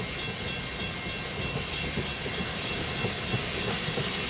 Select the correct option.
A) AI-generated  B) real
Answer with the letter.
B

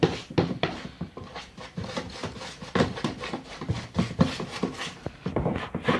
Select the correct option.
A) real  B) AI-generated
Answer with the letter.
A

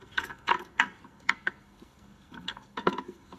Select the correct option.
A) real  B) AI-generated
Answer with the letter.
B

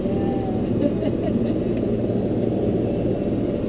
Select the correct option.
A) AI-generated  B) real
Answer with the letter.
B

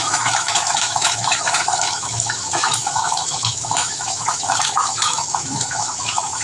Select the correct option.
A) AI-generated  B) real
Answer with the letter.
A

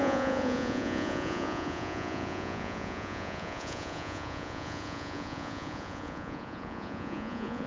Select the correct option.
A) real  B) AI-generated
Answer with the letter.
B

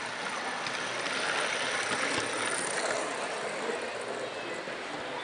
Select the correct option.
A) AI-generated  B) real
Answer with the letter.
B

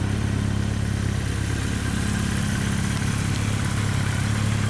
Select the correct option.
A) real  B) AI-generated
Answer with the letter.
A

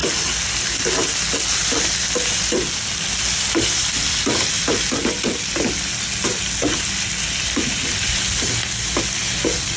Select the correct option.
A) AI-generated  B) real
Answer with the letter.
B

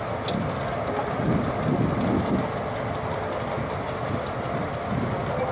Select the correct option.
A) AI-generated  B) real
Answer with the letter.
B